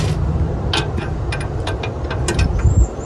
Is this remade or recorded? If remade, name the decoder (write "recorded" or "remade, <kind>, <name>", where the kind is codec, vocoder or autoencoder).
recorded